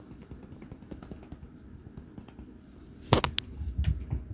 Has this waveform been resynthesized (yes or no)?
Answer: no